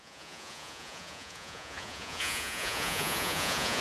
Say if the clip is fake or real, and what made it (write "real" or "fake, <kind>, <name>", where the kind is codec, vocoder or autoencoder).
fake, vocoder, Vocos